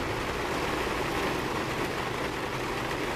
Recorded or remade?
recorded